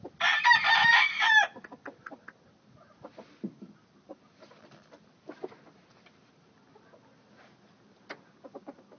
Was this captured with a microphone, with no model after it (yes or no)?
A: yes